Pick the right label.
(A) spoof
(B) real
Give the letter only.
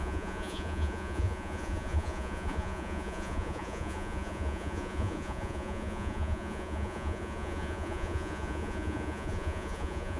A